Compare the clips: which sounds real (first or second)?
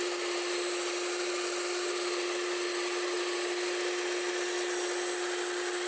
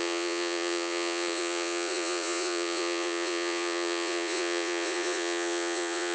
first